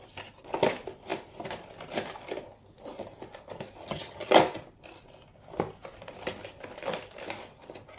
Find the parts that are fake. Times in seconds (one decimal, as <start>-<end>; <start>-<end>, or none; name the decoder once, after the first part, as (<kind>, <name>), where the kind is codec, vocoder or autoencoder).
3.8-4.3 (vocoder, HiFi-GAN)